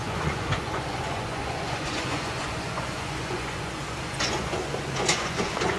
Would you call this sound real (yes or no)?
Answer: no